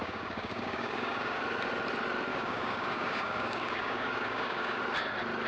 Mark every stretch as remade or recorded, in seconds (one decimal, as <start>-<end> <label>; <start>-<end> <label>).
0.0-1.4 remade; 1.4-2.3 recorded; 2.3-4.8 remade; 4.8-5.5 recorded